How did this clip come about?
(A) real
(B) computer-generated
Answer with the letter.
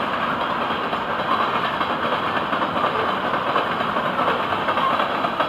A